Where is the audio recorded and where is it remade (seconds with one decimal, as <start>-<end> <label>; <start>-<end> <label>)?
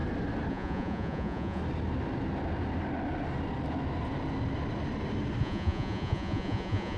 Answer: 0.0-0.5 recorded; 0.5-1.6 remade; 1.6-5.4 recorded; 5.4-7.0 remade